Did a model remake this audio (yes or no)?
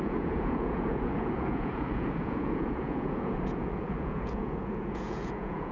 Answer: yes